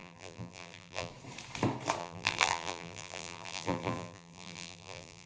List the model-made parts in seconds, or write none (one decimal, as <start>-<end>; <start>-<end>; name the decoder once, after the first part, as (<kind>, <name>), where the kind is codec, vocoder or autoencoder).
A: 0.0-1.1 (vocoder, BigVGAN v2); 2.0-5.3